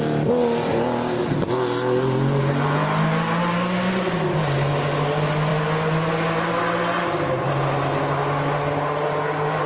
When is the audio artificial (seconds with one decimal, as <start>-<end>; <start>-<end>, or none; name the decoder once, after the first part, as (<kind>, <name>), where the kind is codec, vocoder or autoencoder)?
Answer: none